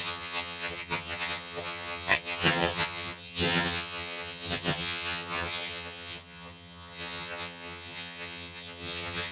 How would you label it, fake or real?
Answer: fake